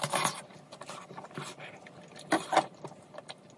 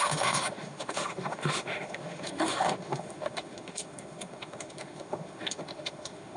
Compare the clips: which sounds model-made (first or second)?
second